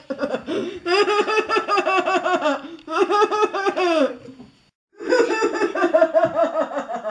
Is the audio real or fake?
real